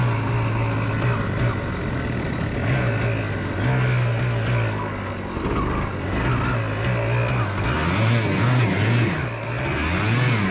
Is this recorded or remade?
recorded